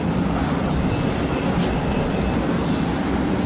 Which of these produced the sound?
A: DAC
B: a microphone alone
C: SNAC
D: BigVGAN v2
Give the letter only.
B